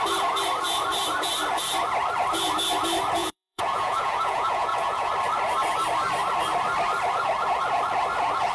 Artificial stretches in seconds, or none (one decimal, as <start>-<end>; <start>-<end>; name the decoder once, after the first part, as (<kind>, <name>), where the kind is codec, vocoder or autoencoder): 3.2-5.1 (vocoder, Vocos)